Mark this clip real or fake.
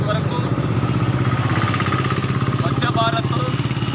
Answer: real